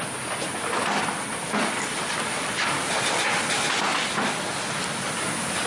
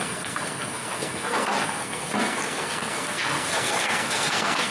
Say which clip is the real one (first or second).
first